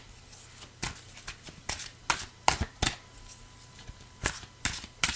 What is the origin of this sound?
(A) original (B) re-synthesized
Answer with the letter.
A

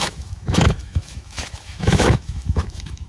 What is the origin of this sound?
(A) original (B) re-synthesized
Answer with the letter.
B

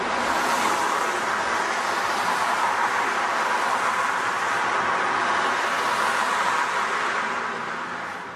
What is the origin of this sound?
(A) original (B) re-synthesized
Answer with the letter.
A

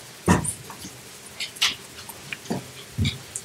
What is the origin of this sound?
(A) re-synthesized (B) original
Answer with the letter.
B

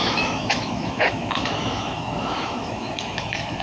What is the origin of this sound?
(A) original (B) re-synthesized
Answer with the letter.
B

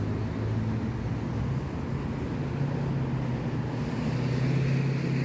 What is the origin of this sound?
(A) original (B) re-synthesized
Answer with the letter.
A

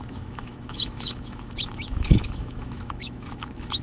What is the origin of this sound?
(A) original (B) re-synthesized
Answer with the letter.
B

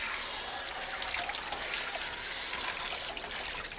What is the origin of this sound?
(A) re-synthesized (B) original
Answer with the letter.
B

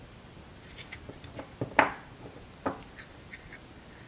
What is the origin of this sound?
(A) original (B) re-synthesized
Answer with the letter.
A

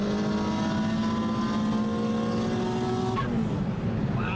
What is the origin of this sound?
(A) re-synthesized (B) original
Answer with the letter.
B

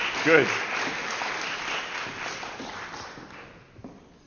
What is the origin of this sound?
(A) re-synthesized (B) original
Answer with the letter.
B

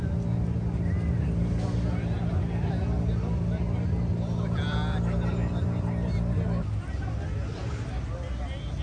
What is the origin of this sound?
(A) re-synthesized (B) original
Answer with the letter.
B